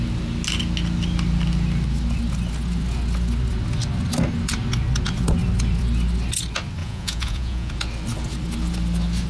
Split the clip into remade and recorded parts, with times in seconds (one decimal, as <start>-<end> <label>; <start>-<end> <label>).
0.0-6.8 recorded; 6.8-7.7 remade; 7.7-9.3 recorded